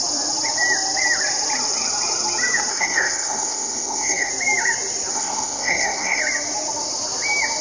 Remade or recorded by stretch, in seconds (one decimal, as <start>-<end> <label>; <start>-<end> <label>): 0.0-2.7 recorded; 2.7-4.3 remade; 4.3-5.1 recorded; 5.1-6.2 remade; 6.2-7.6 recorded

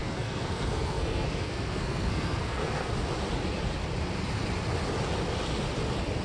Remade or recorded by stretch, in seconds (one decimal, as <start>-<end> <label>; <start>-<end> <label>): 0.0-2.9 remade; 2.9-6.2 recorded

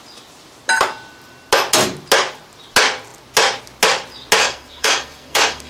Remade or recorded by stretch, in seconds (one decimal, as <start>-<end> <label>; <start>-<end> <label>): 0.0-4.4 recorded; 4.4-5.7 remade